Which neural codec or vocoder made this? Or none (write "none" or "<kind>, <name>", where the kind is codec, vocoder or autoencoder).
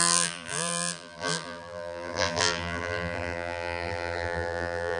vocoder, BigVGAN v2